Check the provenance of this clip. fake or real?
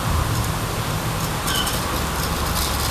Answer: fake